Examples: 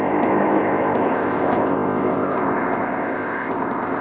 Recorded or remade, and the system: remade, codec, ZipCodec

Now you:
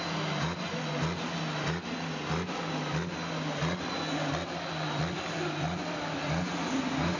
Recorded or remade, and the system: recorded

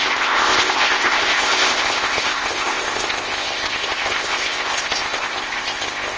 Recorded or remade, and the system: remade, codec, ZipCodec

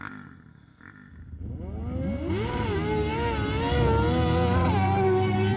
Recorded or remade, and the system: recorded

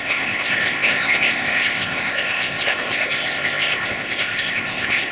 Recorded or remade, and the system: remade, codec, ZipCodec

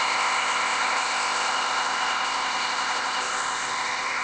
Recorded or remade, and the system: remade, codec, ZipCodec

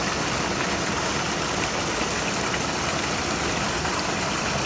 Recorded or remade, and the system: recorded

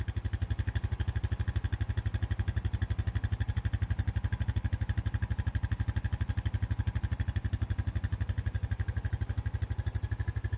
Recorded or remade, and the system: recorded